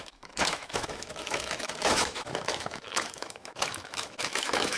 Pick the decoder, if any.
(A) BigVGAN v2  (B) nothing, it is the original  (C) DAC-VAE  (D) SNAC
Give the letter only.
C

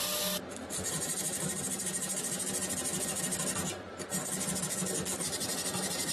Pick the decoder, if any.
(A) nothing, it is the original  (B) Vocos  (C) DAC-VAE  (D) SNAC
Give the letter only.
A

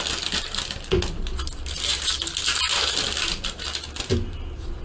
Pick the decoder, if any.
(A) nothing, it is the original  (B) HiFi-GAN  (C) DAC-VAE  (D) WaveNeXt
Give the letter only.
A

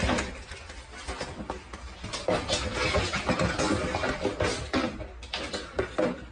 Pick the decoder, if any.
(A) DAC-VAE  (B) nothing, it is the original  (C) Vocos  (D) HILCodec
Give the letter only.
B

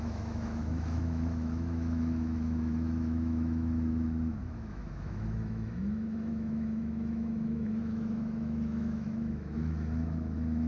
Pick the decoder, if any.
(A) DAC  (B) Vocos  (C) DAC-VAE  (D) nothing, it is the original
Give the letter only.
C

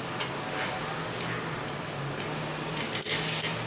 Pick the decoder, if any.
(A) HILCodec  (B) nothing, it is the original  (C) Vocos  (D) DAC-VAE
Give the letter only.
B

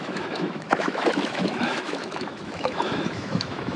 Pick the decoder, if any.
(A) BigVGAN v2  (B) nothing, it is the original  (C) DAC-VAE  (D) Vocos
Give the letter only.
C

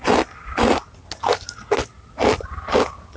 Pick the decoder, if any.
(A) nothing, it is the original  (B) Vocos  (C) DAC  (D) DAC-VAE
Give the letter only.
A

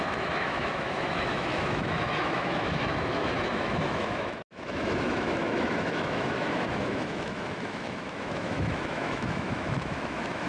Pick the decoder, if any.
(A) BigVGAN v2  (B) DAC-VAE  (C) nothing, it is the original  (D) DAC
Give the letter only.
B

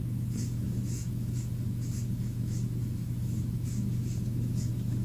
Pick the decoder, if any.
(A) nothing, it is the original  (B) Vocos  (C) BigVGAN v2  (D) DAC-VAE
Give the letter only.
D